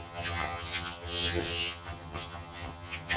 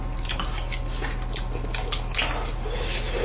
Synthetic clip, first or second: first